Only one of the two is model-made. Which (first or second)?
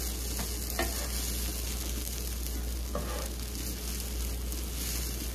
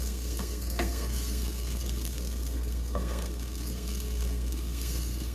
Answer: second